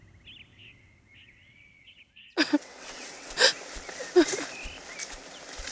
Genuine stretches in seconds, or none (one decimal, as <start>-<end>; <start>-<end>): 0.0-0.5; 3.3-5.7